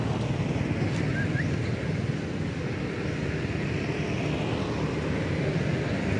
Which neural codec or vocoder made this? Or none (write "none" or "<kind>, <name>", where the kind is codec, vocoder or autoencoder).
none